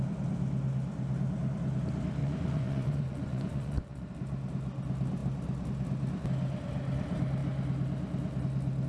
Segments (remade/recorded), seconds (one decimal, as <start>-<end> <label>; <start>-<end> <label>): 0.0-2.2 recorded; 2.2-4.1 remade; 4.1-8.9 recorded